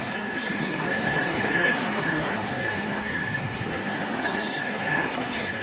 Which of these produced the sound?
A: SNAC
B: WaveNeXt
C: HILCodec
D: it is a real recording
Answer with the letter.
A